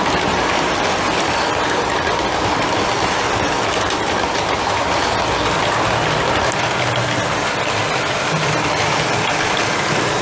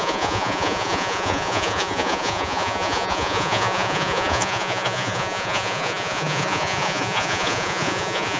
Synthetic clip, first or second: second